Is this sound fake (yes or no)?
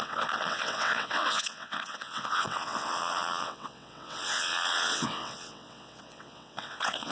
yes